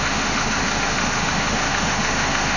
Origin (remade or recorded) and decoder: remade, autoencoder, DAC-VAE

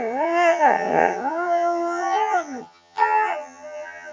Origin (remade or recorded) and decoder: remade, vocoder, HiFi-GAN